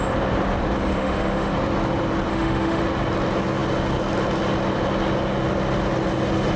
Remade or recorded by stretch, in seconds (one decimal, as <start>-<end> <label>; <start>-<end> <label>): 0.0-0.9 recorded; 0.9-1.5 remade; 1.5-2.3 recorded; 2.3-2.8 remade; 2.8-6.6 recorded